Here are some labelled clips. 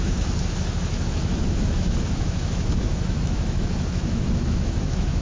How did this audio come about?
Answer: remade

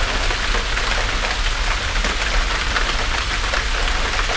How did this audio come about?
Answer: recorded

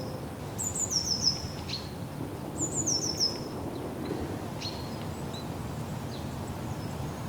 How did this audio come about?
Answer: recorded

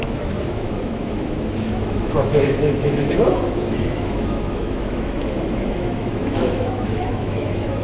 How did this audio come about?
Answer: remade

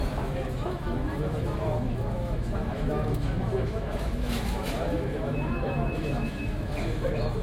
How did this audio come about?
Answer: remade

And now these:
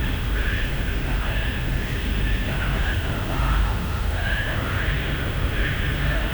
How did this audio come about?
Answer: remade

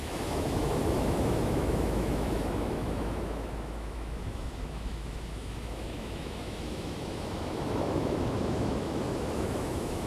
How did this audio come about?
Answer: remade